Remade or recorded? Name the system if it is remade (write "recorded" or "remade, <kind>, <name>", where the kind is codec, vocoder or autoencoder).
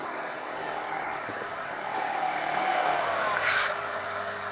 remade, codec, DAC